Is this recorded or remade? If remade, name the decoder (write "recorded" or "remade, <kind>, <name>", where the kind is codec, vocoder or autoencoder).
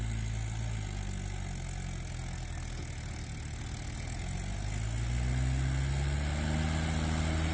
recorded